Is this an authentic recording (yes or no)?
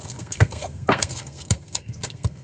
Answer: no